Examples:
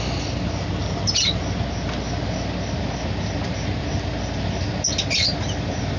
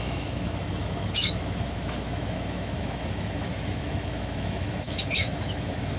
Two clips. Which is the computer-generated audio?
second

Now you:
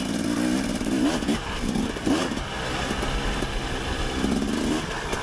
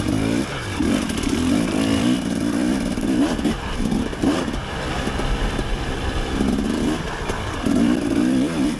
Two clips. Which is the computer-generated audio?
second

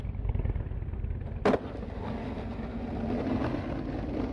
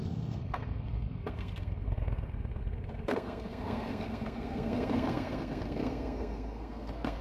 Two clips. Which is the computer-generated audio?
second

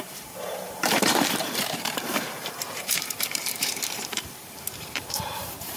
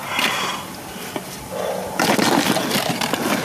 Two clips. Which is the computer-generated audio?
first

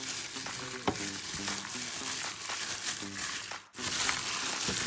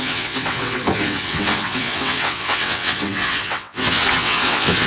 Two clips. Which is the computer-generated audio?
second